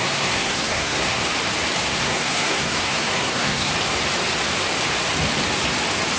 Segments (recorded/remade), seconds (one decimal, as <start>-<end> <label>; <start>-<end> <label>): 0.0-1.2 remade; 1.2-1.8 recorded; 1.8-3.7 remade; 3.7-6.2 recorded